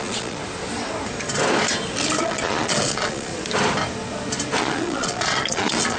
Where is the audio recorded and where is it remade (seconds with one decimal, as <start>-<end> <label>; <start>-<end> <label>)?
0.0-0.4 remade; 0.4-2.2 recorded; 2.2-3.3 remade; 3.3-4.6 recorded; 4.6-6.0 remade